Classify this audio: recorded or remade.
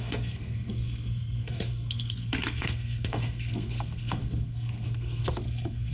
remade